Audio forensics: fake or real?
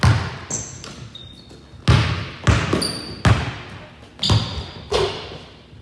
real